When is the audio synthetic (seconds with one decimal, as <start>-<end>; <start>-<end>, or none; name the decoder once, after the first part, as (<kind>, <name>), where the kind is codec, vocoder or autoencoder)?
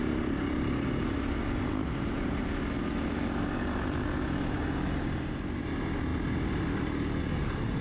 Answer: none